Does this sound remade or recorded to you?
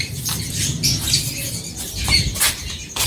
recorded